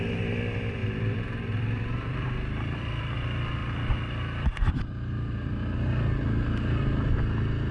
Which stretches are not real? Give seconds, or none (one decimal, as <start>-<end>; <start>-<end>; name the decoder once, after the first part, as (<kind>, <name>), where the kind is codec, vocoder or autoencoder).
0.8-3.0 (vocoder, BigVGAN v2); 3.6-4.7